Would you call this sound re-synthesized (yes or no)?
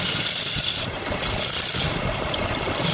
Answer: no